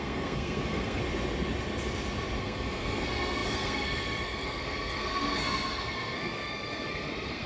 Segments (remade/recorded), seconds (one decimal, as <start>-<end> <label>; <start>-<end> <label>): 0.0-1.0 remade; 1.0-2.4 recorded; 2.4-7.5 remade

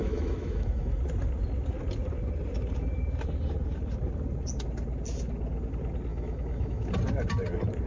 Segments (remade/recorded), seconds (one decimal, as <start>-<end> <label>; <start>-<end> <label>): 0.0-1.0 remade; 1.0-6.1 recorded; 6.1-6.9 remade; 6.9-7.9 recorded

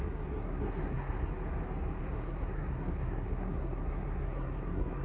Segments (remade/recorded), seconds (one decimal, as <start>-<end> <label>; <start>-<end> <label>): 0.0-1.3 remade; 1.3-2.0 recorded; 2.0-5.0 remade

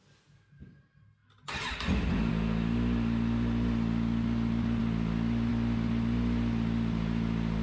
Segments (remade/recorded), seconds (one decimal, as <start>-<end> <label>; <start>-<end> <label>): 0.0-7.6 recorded